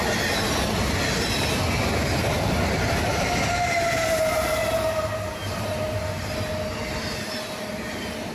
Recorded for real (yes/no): yes